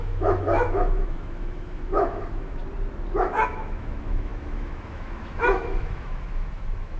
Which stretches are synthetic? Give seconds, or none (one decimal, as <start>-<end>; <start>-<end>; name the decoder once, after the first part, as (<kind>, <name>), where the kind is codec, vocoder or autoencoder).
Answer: 0.0-2.6 (autoencoder, DAC-VAE); 3.2-7.0